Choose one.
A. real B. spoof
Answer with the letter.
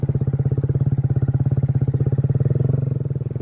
A